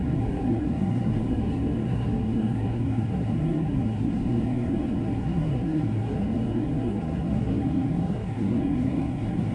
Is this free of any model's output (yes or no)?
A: no